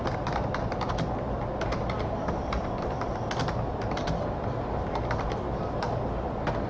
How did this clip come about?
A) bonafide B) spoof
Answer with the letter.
B